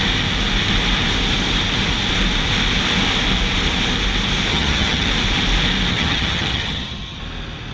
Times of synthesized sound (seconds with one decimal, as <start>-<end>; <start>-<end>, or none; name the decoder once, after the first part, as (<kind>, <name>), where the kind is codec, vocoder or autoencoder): 4.5-5.1 (vocoder, HiFi-GAN); 5.9-7.2